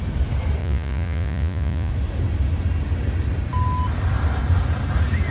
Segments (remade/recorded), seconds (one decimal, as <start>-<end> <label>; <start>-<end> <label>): 0.0-0.6 recorded; 0.6-1.9 remade; 1.9-5.3 recorded